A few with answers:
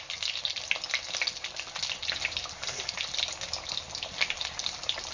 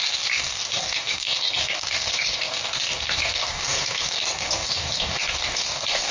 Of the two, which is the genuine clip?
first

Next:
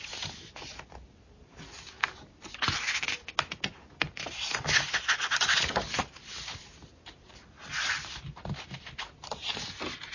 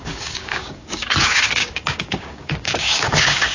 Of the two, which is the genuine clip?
first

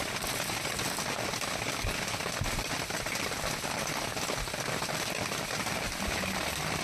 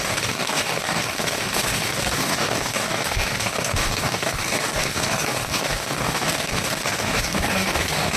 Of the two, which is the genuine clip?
first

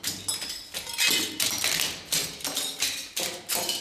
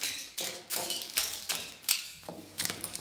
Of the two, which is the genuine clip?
first